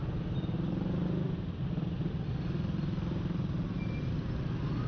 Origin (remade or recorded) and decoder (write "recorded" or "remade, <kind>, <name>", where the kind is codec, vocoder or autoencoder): recorded